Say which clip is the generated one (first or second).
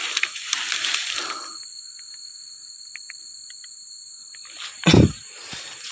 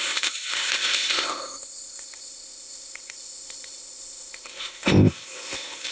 second